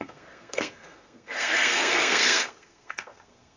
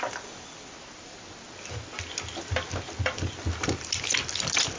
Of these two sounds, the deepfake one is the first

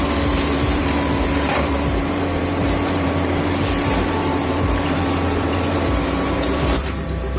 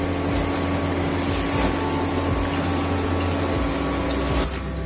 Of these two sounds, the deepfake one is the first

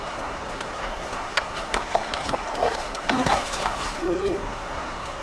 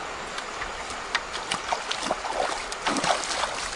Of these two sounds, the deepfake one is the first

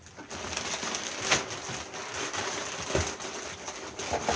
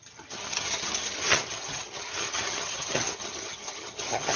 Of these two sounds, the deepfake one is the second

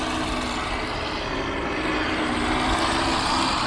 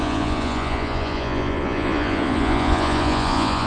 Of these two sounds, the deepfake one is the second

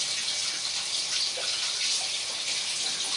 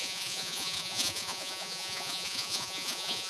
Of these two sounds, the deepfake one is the second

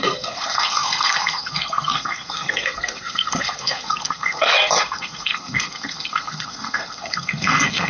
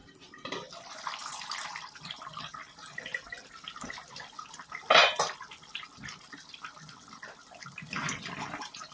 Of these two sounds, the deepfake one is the first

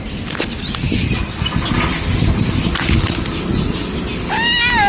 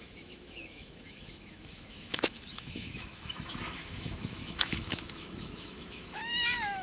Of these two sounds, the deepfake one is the second